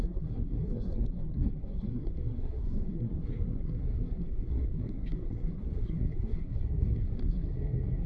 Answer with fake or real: fake